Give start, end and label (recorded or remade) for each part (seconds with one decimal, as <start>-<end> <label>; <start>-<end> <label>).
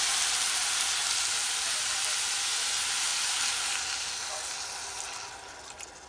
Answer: 0.0-6.1 recorded